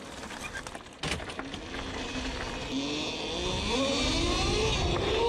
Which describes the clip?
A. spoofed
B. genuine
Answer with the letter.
B